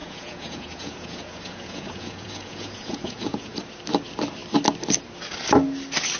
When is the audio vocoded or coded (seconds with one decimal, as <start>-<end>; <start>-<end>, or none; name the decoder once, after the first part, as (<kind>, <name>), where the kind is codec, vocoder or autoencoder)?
0.0-3.6 (vocoder, Vocos)